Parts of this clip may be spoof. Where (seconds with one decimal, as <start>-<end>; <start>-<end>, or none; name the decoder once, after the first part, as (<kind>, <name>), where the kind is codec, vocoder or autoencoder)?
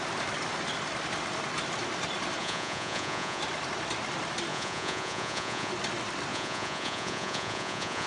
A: 2.4-3.4 (vocoder, Vocos); 4.5-5.7; 6.3-8.1